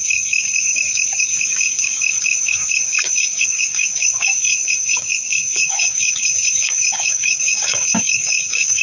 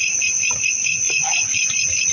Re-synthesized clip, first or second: first